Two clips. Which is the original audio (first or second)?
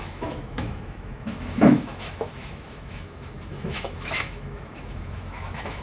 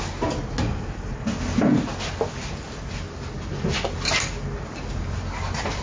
second